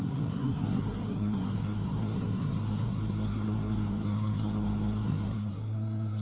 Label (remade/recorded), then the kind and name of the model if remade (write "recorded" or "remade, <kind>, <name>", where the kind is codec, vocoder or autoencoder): remade, codec, SNAC